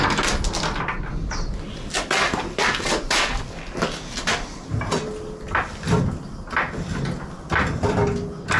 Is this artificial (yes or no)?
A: no